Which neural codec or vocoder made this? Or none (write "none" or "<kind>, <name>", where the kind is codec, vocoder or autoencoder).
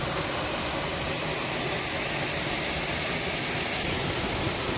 none